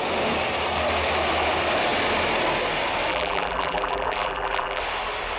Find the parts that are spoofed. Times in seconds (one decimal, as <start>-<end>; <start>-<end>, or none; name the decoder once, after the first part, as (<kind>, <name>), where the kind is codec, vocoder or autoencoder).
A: 3.1-4.8 (vocoder, BigVGAN v2)